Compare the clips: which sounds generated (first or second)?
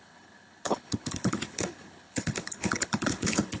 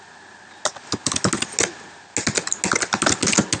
first